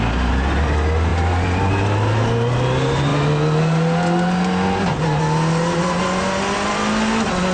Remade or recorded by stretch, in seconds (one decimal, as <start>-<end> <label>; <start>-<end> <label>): 0.0-7.5 recorded